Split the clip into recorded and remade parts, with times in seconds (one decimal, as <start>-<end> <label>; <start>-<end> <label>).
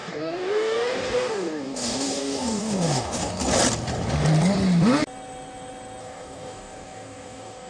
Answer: 0.0-3.4 remade; 3.4-6.0 recorded; 6.0-7.7 remade